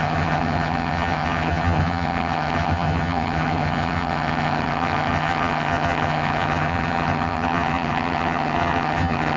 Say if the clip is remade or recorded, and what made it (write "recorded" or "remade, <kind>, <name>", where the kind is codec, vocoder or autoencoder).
remade, vocoder, HiFi-GAN